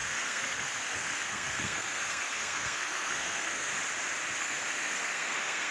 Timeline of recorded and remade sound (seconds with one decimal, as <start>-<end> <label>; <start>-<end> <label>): 0.0-3.7 remade; 3.7-4.4 recorded; 4.4-5.7 remade